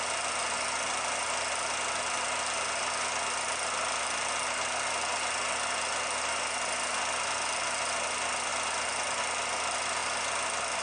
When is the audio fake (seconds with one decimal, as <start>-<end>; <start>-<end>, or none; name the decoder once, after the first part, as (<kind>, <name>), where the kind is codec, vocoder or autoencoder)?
none